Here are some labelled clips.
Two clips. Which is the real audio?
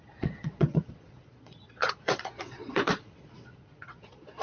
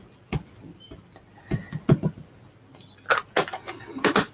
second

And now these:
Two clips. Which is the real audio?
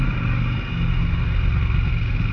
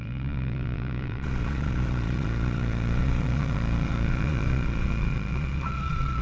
first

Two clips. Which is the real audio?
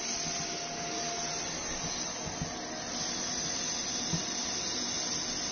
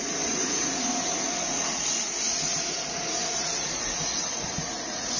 first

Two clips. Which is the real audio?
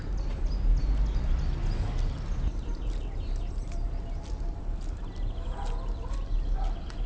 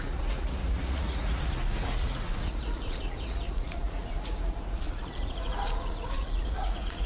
first